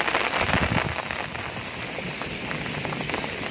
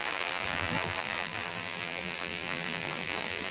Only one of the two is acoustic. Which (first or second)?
first